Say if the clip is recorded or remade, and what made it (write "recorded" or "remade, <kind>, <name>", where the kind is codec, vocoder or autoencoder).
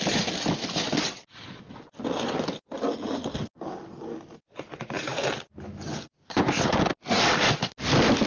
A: recorded